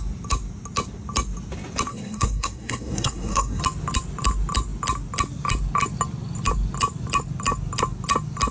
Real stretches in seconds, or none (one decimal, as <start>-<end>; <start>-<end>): 0.0-1.9; 3.6-8.5